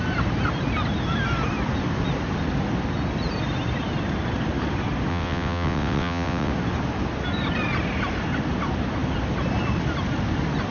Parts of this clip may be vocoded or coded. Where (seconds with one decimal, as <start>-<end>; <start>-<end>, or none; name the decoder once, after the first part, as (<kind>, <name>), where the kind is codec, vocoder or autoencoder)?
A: 5.1-6.5 (vocoder, WaveNeXt)